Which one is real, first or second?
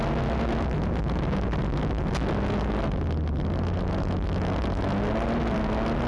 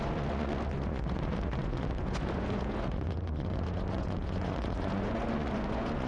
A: first